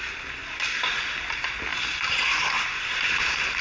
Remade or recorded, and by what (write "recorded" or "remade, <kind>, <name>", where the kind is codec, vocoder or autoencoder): recorded